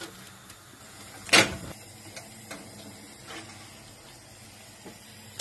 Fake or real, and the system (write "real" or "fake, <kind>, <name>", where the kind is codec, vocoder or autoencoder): real